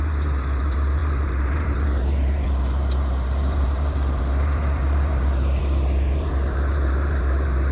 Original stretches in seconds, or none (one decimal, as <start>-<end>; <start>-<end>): none